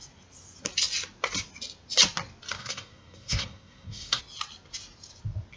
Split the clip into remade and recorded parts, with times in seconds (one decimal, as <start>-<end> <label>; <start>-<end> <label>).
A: 0.0-2.6 recorded; 2.6-4.2 remade; 4.2-5.6 recorded